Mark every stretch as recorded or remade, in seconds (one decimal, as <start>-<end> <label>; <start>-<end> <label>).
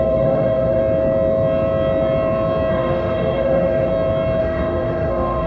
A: 0.0-0.8 remade; 0.8-2.7 recorded; 2.7-3.9 remade; 3.9-4.4 recorded; 4.4-5.5 remade